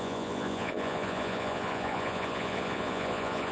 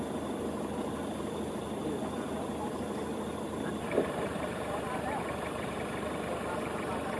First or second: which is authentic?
second